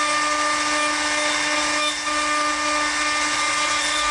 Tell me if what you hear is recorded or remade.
recorded